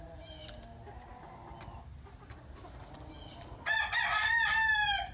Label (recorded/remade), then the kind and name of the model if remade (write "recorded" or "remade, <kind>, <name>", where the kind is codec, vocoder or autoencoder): recorded